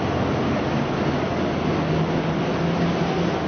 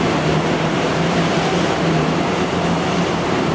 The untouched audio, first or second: first